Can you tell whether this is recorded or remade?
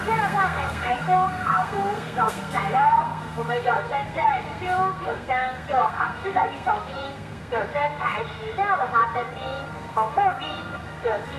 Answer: remade